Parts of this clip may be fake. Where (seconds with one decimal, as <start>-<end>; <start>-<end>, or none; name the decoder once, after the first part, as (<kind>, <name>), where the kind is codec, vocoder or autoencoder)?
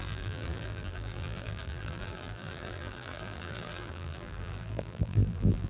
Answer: 0.0-5.7 (vocoder, BigVGAN v2)